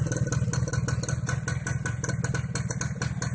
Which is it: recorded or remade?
recorded